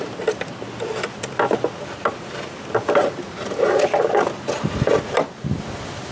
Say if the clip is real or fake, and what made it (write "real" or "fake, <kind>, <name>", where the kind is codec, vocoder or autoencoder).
real